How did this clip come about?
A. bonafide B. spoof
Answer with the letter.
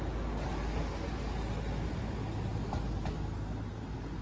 A